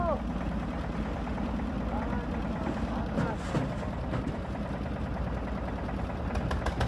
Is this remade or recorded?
recorded